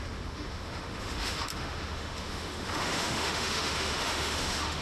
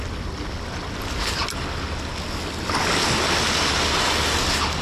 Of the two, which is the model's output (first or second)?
first